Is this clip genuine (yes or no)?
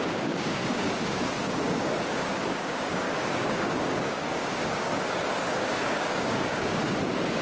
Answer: no